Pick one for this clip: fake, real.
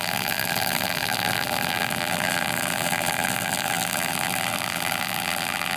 fake